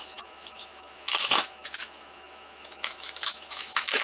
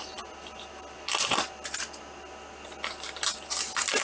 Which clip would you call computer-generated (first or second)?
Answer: first